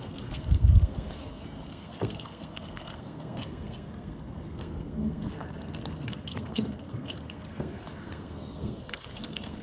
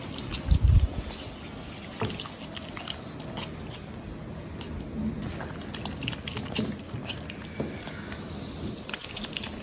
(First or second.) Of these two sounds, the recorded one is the second